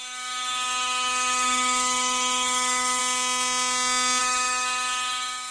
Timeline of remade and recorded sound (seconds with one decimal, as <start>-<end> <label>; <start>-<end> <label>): 0.0-3.0 remade; 3.0-4.2 recorded; 4.2-5.5 remade